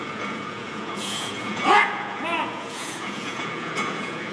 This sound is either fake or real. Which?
fake